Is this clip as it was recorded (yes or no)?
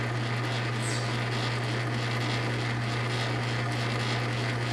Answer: yes